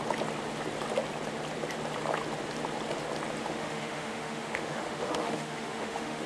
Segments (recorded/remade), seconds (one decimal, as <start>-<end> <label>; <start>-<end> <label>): 0.0-3.4 recorded; 3.4-6.3 remade